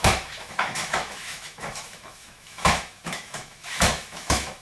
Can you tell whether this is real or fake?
fake